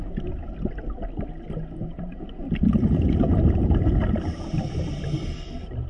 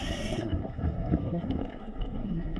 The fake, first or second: second